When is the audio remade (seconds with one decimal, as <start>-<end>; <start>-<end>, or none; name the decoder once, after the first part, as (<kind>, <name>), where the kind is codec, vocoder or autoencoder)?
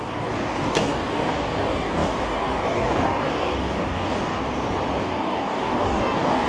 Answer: 0.0-4.4 (codec, DAC); 5.0-6.5